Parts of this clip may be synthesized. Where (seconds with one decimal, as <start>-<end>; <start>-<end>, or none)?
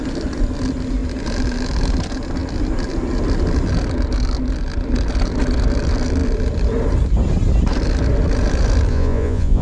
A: 8.9-9.6